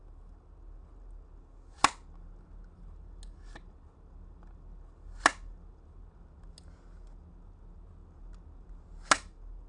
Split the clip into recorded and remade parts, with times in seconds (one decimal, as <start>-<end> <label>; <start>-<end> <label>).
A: 0.0-9.7 recorded